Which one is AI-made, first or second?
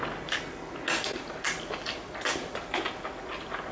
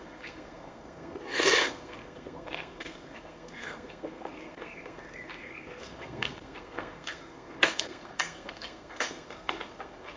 second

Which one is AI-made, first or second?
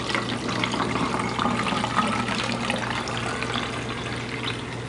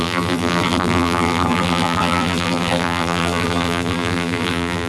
second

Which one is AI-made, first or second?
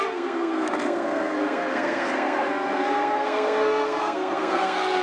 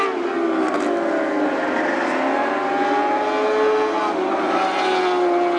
first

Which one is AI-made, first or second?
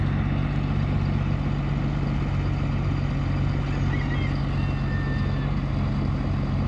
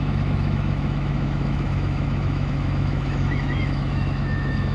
second